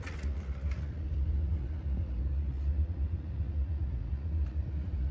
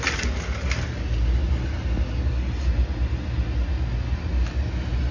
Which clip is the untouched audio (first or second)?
second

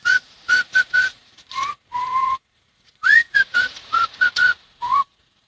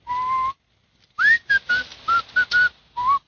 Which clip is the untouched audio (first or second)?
second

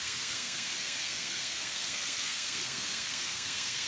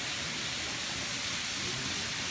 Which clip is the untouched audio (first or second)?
second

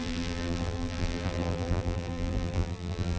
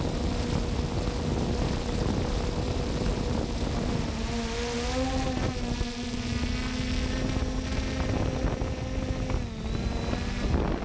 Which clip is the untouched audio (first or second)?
second